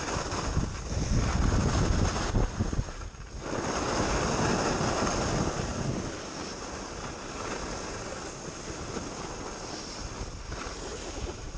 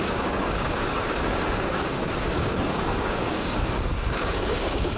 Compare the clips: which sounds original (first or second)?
first